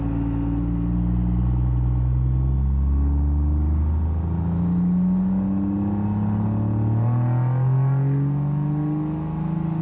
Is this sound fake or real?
real